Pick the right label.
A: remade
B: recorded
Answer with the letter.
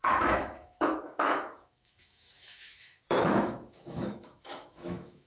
A